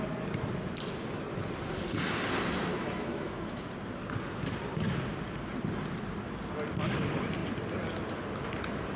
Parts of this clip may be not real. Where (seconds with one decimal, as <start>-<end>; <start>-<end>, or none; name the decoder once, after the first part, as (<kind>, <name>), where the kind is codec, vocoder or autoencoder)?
2.7-3.7 (autoencoder, DAC-VAE)

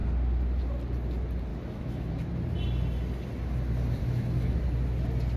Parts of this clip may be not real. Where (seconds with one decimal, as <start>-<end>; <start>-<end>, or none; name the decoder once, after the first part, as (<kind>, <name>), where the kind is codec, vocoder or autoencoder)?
1.5-2.3 (autoencoder, DAC-VAE); 4.0-4.6

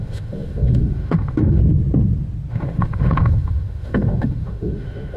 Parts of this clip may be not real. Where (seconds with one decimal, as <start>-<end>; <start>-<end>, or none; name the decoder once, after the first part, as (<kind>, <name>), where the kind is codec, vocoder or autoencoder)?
0.0-1.6 (autoencoder, DAC-VAE); 2.5-5.2

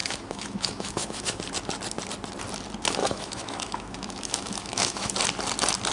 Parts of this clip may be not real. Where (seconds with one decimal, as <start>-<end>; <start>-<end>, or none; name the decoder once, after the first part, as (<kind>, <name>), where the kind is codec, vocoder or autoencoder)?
0.0-1.4 (autoencoder, DAC-VAE); 3.0-5.1

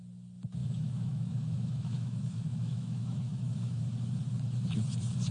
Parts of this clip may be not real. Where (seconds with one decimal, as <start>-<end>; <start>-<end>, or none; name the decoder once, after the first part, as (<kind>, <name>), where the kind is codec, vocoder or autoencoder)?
0.6-3.8 (autoencoder, DAC-VAE)

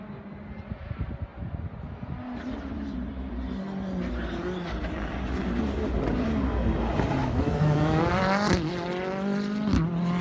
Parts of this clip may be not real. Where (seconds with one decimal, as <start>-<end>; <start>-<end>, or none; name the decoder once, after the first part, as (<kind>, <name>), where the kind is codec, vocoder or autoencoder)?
7.2-8.1 (autoencoder, DAC-VAE)

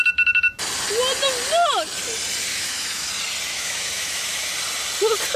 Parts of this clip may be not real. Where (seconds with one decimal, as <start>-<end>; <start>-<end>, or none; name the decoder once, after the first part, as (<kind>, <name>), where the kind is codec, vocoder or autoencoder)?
2.5-3.1 (autoencoder, DAC-VAE); 3.5-4.5